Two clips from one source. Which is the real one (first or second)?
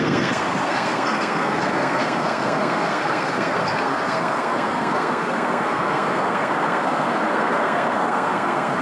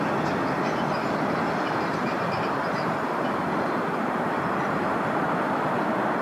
second